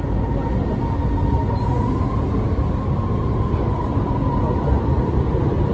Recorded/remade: recorded